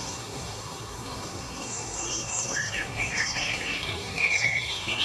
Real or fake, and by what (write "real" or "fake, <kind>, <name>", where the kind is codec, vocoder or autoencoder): fake, codec, SNAC